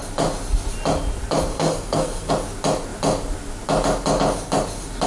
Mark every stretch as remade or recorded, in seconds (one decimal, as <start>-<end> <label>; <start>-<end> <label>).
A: 0.0-1.5 recorded; 1.5-2.3 remade; 2.3-5.1 recorded